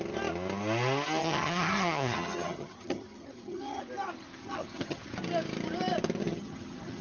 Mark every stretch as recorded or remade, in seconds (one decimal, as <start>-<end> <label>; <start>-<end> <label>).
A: 0.0-1.2 recorded; 1.2-3.8 remade; 3.8-4.4 recorded; 4.4-5.0 remade; 5.0-6.2 recorded; 6.2-7.0 remade